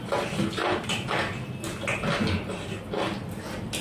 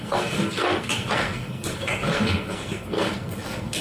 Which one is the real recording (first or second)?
first